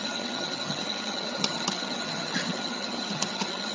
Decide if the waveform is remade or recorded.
remade